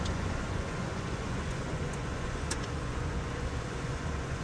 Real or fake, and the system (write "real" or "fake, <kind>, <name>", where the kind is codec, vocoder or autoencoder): fake, vocoder, Vocos